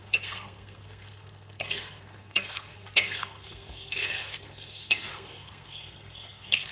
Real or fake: fake